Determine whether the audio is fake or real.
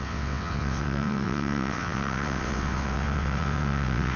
fake